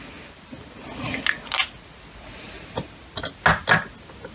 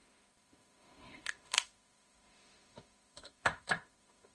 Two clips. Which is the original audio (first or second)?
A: first